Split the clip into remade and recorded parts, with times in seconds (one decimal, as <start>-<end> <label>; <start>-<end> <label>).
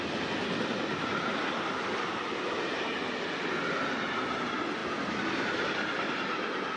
0.0-6.8 recorded